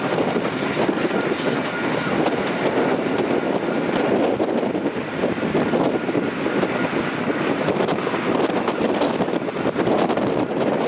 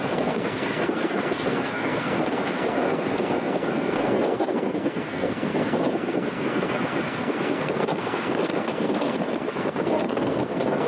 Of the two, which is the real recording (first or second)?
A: first